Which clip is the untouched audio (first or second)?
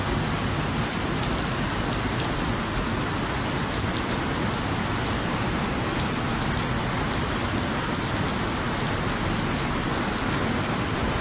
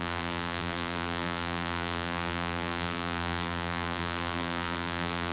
first